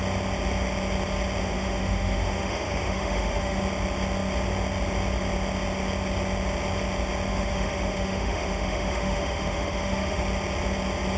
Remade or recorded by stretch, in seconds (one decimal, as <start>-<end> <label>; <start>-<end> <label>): 0.0-1.4 recorded; 1.4-3.6 remade; 3.6-7.3 recorded; 7.3-10.2 remade; 10.2-11.2 recorded